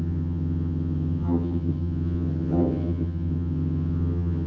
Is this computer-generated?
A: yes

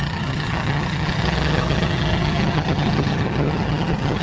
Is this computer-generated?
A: yes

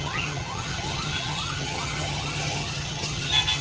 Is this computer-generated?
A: yes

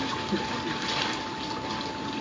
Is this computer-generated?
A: no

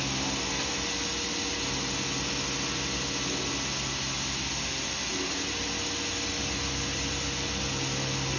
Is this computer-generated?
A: no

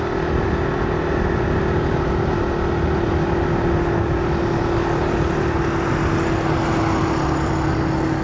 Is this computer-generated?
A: no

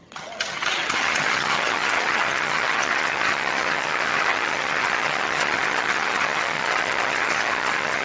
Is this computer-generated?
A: yes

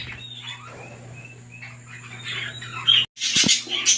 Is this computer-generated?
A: no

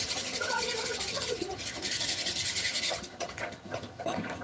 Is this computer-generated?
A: yes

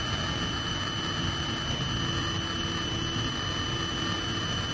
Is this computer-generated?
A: no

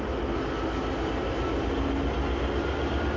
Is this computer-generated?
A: no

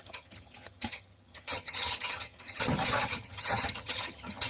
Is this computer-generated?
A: yes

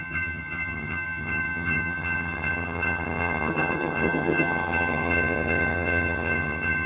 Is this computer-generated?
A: yes